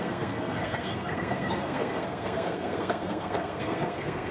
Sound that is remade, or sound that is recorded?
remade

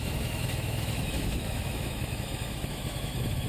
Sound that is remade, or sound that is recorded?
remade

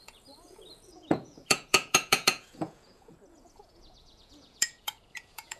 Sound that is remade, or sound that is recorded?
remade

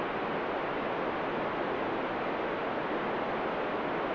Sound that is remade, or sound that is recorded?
recorded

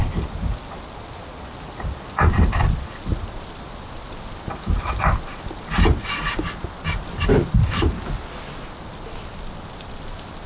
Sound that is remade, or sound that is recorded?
recorded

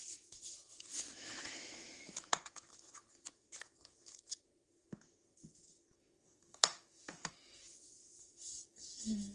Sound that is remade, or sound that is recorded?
remade